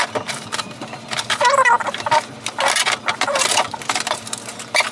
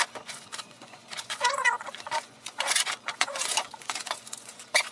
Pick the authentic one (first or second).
first